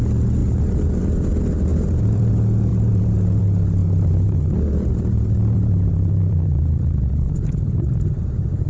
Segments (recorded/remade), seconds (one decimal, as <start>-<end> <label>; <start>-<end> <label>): 0.0-0.4 recorded; 0.4-1.0 remade; 1.0-1.7 recorded; 1.7-2.3 remade; 2.3-2.7 recorded; 2.7-3.4 remade; 3.4-3.8 recorded; 3.8-8.7 remade